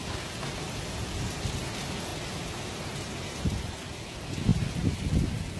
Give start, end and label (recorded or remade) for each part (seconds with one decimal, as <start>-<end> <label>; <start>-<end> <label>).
0.0-4.5 recorded; 4.5-5.0 remade; 5.0-5.6 recorded